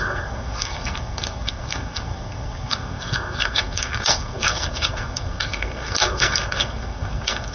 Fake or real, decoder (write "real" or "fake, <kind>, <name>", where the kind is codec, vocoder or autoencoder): fake, codec, SNAC